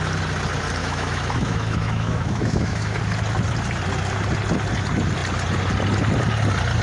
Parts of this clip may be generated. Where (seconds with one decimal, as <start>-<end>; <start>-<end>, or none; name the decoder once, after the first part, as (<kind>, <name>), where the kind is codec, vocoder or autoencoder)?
0.8-3.0 (autoencoder, DAC-VAE)